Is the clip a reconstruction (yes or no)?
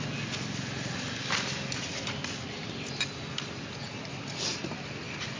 no